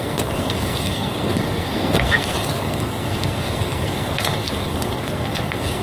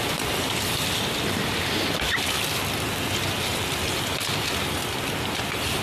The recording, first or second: second